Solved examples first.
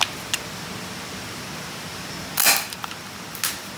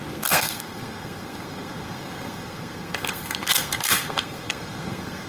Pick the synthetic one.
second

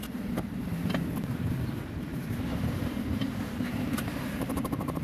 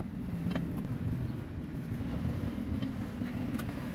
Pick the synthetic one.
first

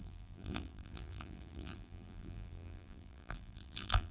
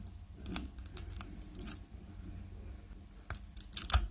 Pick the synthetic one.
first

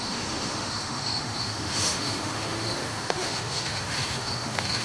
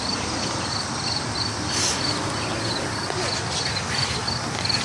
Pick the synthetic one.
first